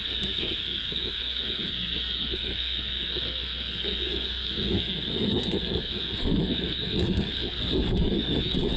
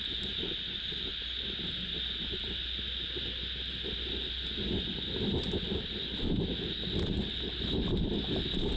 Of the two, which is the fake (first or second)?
first